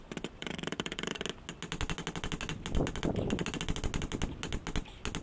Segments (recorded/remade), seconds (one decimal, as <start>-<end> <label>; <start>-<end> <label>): 0.0-0.4 recorded; 0.4-1.2 remade; 1.2-5.2 recorded